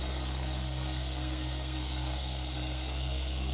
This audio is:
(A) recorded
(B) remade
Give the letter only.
B